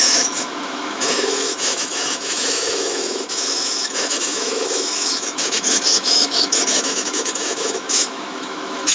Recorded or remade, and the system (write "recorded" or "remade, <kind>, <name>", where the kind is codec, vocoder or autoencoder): remade, autoencoder, DAC-VAE